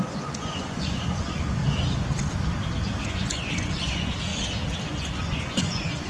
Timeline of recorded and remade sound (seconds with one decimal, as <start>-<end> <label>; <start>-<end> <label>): 0.0-1.6 remade; 1.6-3.0 recorded; 3.0-4.3 remade; 4.3-4.9 recorded; 4.9-6.1 remade